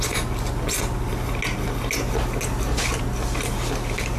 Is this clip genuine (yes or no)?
yes